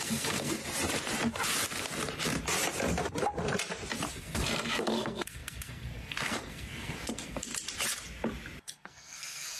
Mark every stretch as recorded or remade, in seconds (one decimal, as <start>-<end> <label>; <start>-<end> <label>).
0.0-0.6 remade; 0.6-4.1 recorded; 4.1-7.5 remade; 7.5-8.6 recorded; 8.6-9.6 remade